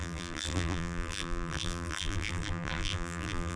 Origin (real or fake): fake